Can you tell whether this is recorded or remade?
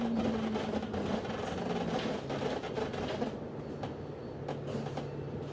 recorded